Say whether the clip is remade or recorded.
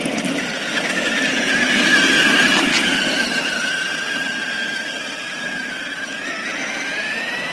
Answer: recorded